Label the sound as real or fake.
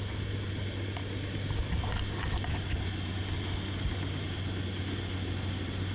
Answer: real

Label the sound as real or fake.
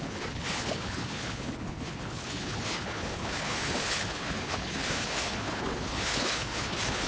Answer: fake